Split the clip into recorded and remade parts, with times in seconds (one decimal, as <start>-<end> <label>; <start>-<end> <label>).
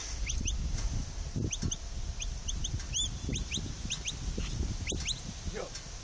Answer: 0.0-6.0 recorded